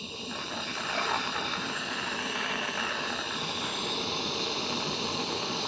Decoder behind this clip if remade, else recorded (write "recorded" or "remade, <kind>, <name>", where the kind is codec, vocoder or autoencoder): recorded